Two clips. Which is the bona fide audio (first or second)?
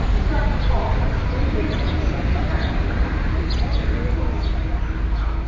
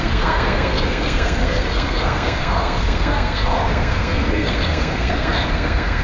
first